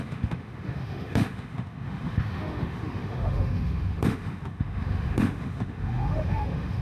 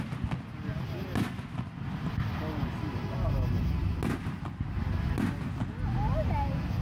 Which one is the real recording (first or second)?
second